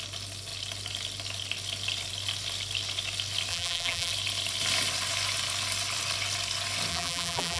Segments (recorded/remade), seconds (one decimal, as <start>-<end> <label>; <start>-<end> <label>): 0.0-3.5 recorded; 3.5-4.1 remade; 4.1-6.9 recorded; 6.9-7.6 remade